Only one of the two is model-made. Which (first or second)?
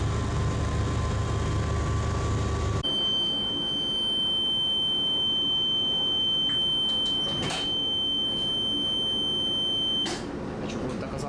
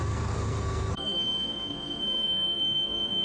second